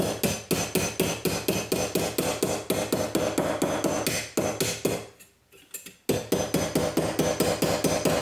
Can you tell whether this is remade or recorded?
recorded